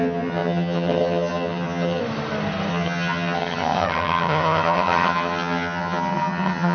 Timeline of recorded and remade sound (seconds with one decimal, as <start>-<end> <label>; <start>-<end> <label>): 0.0-2.0 remade; 2.0-2.7 recorded; 2.7-6.7 remade